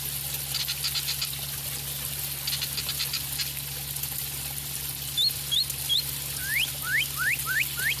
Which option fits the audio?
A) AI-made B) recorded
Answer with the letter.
B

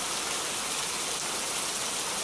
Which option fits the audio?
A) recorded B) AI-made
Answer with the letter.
A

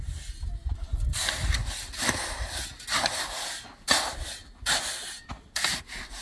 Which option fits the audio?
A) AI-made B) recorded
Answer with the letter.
B